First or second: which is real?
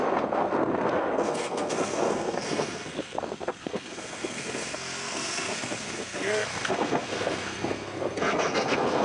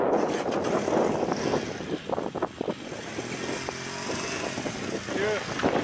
second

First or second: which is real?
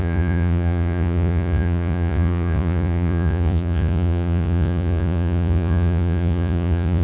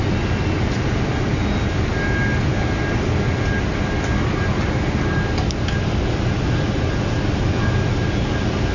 second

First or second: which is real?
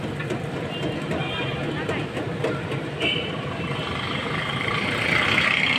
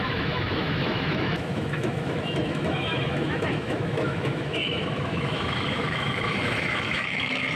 first